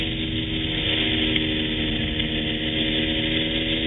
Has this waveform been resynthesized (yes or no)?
no